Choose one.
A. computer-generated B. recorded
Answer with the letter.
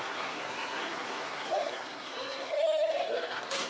A